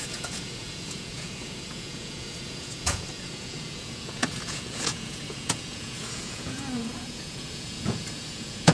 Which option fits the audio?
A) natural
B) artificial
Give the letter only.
B